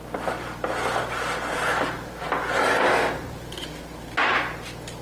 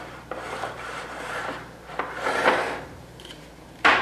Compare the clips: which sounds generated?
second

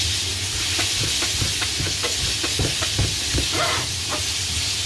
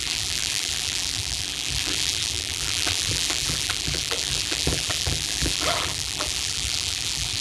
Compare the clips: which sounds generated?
second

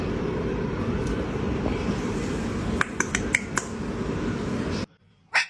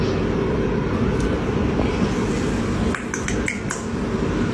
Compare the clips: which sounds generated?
first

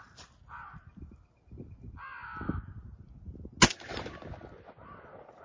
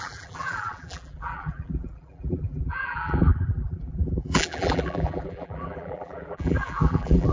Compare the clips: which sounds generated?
second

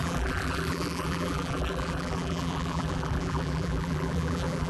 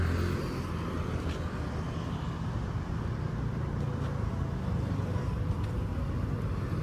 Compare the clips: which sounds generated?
first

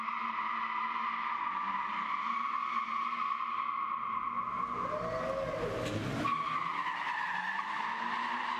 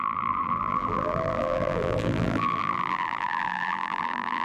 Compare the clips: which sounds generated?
second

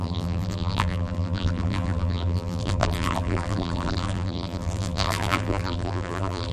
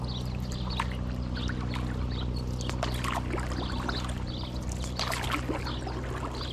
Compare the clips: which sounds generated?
first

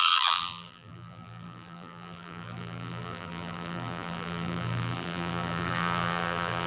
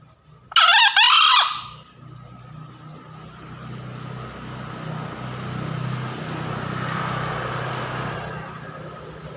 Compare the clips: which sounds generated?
first